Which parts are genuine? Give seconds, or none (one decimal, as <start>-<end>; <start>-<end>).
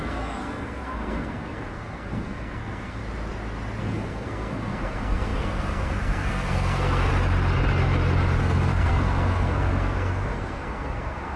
3.0-3.8; 7.1-8.4